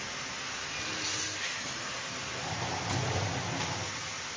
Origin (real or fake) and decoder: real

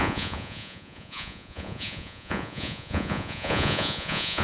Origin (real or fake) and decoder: fake, vocoder, Vocos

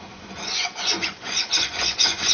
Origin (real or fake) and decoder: fake, vocoder, Vocos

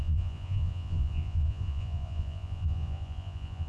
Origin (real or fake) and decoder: fake, vocoder, Vocos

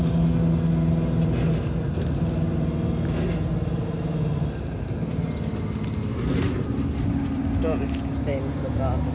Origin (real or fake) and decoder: real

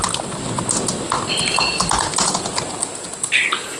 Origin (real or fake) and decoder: real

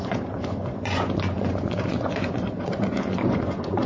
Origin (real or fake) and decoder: fake, vocoder, Vocos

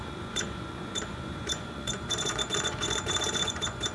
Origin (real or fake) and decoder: fake, vocoder, Vocos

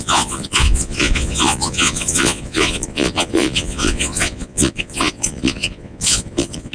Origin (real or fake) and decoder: fake, vocoder, Vocos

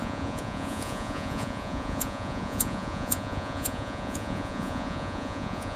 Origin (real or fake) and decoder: fake, vocoder, Vocos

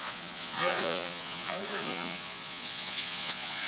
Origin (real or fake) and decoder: fake, vocoder, Vocos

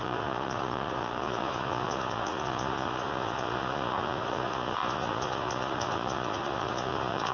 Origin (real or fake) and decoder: fake, vocoder, Vocos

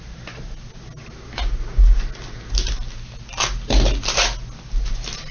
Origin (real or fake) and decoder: real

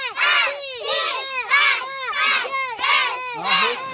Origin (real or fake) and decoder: real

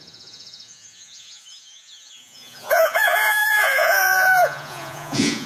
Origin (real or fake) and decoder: fake, vocoder, Vocos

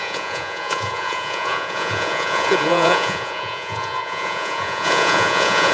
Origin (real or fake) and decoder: fake, vocoder, Vocos